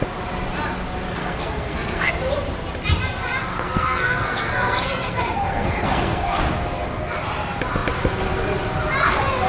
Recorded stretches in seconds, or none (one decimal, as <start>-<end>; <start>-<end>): 0.0-1.2; 2.1-3.5; 6.4-9.5